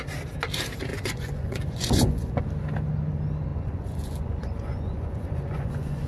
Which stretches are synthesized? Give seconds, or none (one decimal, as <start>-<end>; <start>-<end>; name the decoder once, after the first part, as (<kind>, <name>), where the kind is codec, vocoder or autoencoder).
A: 0.9-2.4 (vocoder, Vocos); 3.5-6.1